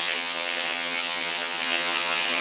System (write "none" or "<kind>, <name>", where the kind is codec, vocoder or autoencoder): vocoder, HiFi-GAN